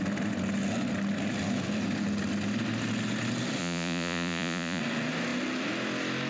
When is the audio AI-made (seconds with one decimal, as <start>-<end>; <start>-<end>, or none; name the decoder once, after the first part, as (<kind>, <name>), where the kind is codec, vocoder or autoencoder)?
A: 3.6-4.8 (vocoder, Vocos)